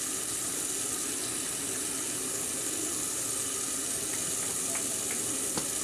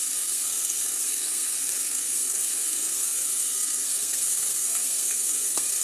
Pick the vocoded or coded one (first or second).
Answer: second